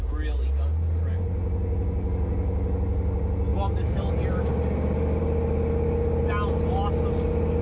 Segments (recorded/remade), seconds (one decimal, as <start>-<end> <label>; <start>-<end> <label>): 0.0-3.5 recorded; 3.5-4.1 remade; 4.1-4.6 recorded; 4.6-5.2 remade; 5.2-7.6 recorded